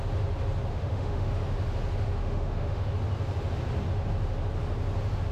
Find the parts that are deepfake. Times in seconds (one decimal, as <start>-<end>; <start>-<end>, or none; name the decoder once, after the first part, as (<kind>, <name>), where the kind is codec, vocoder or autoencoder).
0.7-1.3 (autoencoder, DAC-VAE); 2.2-2.9